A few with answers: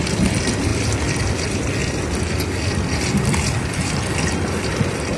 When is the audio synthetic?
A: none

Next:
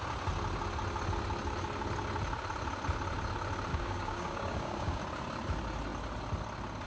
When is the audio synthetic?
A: 3.7-5.0 (codec, DAC)

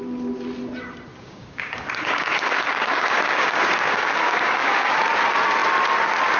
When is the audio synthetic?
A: 1.1-4.9 (codec, DAC)

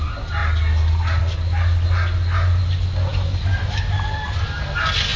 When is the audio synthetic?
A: none

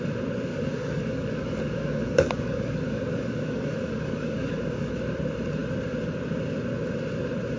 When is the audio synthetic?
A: 0.5-4.9 (codec, DAC)

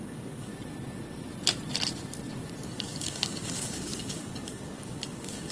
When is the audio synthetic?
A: 0.0-0.5 (codec, DAC); 2.6-5.5

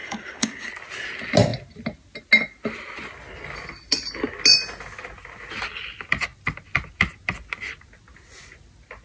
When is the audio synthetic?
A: 0.0-0.7 (codec, DAC)